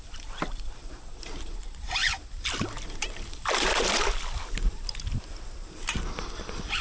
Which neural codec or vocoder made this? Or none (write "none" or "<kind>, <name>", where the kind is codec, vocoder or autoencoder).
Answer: none